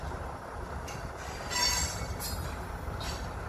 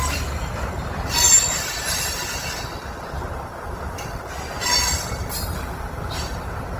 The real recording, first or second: first